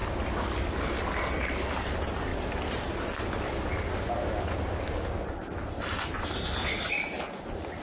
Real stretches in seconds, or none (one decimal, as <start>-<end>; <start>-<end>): 0.0-7.8